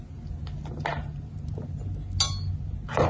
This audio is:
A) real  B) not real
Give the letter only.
A